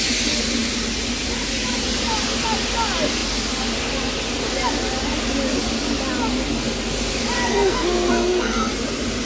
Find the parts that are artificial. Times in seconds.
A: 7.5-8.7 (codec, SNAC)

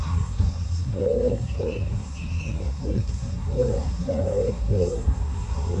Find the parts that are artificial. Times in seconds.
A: 0.0-5.8 (codec, SNAC)